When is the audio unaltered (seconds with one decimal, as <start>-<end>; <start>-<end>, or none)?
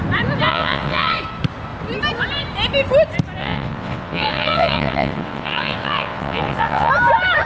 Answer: 0.0-0.5; 1.2-3.4; 6.9-7.5